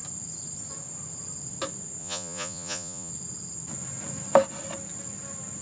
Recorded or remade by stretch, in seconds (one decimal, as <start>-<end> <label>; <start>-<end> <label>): 0.0-2.0 recorded; 2.0-3.1 remade; 3.1-5.6 recorded